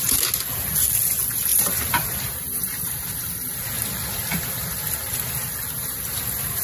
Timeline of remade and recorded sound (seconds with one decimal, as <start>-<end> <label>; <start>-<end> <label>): 0.0-1.5 recorded; 1.5-5.5 remade; 5.5-6.6 recorded